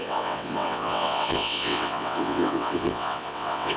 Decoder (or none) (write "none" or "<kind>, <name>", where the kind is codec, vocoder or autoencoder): vocoder, WaveNeXt